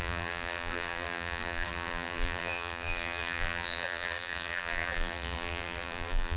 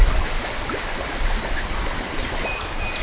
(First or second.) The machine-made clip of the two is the first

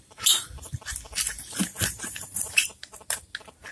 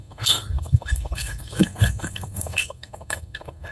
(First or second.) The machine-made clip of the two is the second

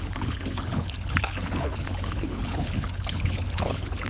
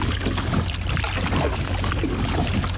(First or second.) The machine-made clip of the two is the first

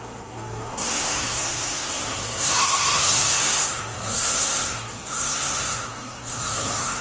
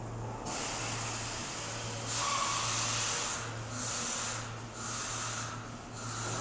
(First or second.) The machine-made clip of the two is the first